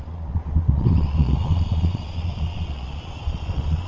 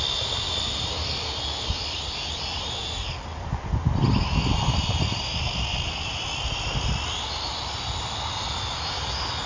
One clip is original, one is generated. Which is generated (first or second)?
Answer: first